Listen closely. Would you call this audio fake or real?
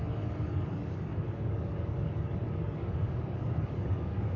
fake